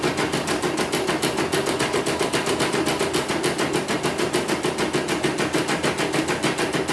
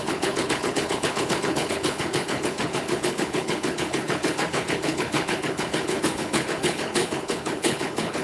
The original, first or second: first